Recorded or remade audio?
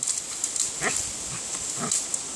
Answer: recorded